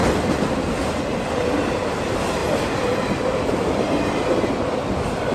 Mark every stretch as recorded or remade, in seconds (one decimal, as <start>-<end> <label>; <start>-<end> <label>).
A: 0.0-0.6 remade; 0.6-5.3 recorded